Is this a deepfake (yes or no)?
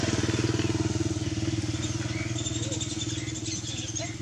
no